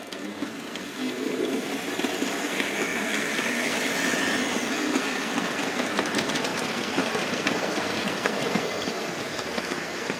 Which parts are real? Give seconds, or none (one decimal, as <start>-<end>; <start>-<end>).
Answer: 1.7-2.4; 3.9-4.7